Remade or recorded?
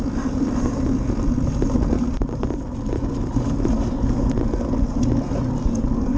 recorded